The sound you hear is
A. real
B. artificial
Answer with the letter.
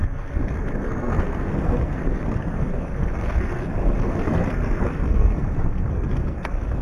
B